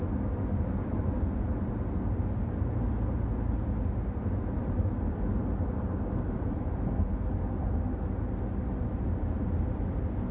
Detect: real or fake real